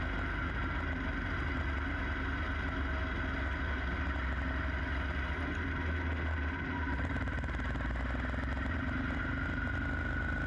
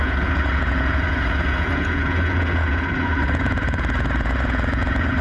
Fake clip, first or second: second